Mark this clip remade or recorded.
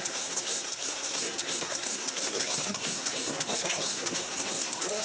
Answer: remade